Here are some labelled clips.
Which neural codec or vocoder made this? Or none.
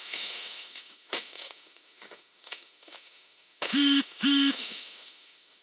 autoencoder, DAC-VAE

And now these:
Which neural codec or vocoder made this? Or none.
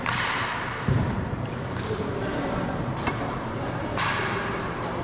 vocoder, BigVGAN v2